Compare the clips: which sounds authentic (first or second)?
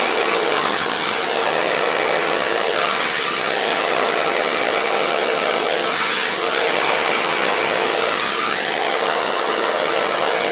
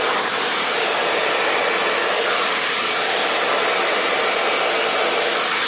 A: second